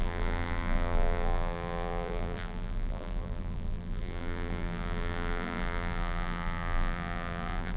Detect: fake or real fake